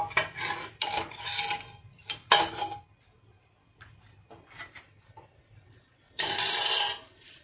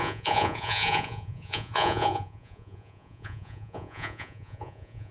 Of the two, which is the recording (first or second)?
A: first